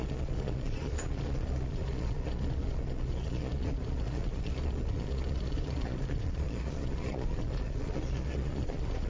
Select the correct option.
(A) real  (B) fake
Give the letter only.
B